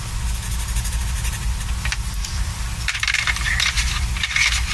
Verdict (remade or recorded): recorded